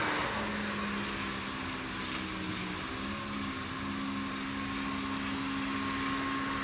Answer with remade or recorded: recorded